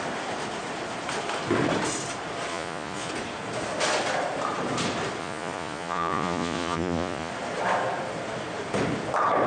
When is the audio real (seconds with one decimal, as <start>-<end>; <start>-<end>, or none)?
0.0-2.5; 3.1-5.2; 7.3-9.5